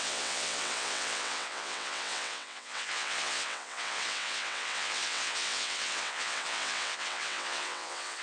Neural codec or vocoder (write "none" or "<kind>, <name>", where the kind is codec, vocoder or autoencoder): vocoder, WaveNeXt